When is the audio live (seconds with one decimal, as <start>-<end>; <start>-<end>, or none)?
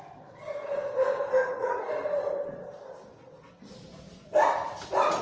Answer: 0.0-1.4; 1.9-5.2